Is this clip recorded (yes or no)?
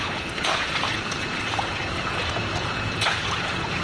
no